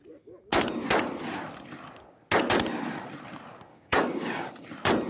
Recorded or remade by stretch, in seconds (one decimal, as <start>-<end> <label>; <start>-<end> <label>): 0.0-3.7 recorded; 3.7-4.5 remade; 4.5-5.1 recorded